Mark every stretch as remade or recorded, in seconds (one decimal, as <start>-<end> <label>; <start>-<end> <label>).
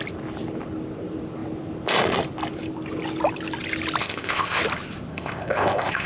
0.0-4.0 recorded; 4.0-4.6 remade; 4.6-5.1 recorded; 5.1-6.1 remade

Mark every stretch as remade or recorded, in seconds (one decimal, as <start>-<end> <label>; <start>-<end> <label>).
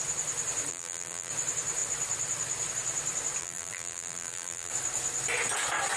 0.0-0.7 recorded; 0.7-1.3 remade; 1.3-3.4 recorded; 3.4-4.7 remade; 4.7-6.0 recorded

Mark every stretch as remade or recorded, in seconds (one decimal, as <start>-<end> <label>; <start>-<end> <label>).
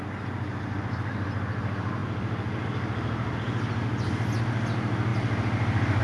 0.0-5.1 recorded; 5.1-6.0 remade